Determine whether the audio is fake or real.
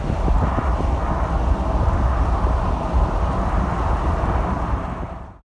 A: real